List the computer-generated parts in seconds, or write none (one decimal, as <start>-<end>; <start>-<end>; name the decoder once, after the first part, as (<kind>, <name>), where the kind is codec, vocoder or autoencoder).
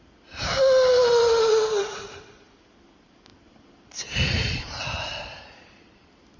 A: 3.3-6.4 (vocoder, BigVGAN v2)